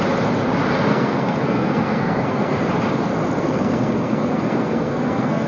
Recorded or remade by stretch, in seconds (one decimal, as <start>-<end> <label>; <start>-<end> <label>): 0.0-0.9 recorded; 0.9-2.7 remade; 2.7-3.4 recorded; 3.4-5.5 remade